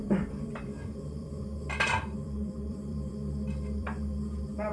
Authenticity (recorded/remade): remade